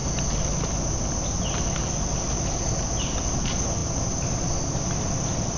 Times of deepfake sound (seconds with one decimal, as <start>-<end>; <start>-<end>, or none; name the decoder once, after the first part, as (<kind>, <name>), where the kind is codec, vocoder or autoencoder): none